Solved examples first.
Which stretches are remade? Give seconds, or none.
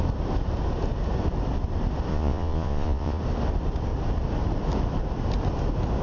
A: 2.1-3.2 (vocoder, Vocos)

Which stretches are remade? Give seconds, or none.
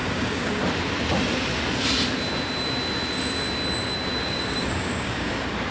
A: 0.0-0.6 (codec, DAC); 4.2-5.3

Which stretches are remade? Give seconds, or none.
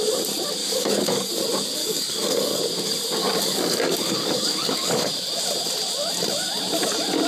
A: 0.6-1.3 (codec, DAC); 1.8-2.6; 3.2-5.1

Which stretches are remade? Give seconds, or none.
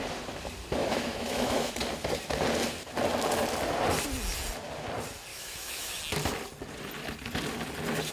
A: 0.8-1.7 (autoencoder, DAC-VAE); 5.3-6.0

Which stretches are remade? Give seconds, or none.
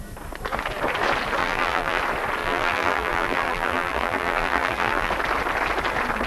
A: 1.4-2.0 (vocoder, BigVGAN v2); 2.4-5.1